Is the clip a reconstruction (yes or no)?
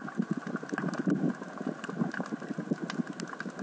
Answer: no